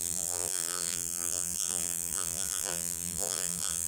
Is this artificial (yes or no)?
yes